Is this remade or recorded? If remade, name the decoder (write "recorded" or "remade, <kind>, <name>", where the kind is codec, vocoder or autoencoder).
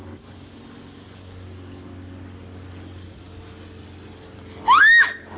recorded